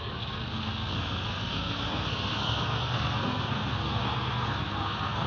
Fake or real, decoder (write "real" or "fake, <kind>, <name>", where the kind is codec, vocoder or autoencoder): fake, codec, SNAC